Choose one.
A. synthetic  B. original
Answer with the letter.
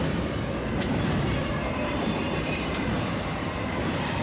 A